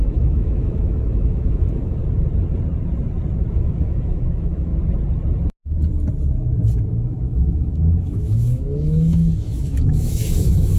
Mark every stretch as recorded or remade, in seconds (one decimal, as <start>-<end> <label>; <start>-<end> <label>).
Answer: 0.0-2.0 remade; 2.0-3.5 recorded; 3.5-4.7 remade; 4.7-6.9 recorded; 6.9-10.8 remade